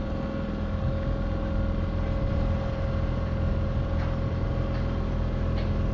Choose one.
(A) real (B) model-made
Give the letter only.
A